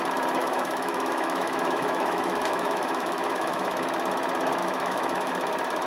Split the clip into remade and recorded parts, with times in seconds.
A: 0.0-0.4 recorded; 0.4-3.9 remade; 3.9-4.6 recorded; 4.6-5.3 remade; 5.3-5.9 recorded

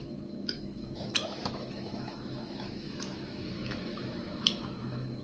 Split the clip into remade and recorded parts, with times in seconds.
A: 0.0-5.2 remade